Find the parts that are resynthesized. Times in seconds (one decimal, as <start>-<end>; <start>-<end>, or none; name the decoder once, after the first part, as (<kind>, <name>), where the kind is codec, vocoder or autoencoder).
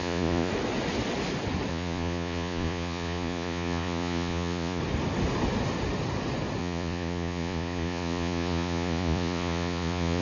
0.0-0.5 (vocoder, Vocos); 1.7-4.8; 6.6-10.2